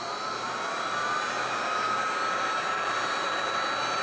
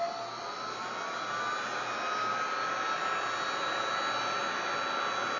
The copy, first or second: first